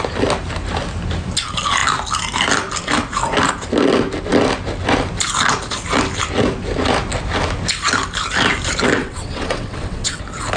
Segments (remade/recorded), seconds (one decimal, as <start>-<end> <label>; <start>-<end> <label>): 0.0-9.0 recorded; 9.0-10.2 remade; 10.2-10.6 recorded